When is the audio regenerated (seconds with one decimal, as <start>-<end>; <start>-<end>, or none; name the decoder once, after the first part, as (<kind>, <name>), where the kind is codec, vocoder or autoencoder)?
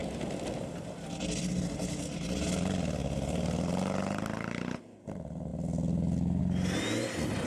none